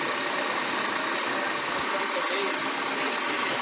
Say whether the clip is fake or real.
real